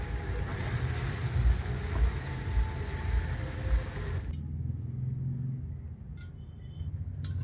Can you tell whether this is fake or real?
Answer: real